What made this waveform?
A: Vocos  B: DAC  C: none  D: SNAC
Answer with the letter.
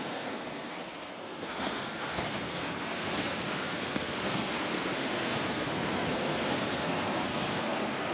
D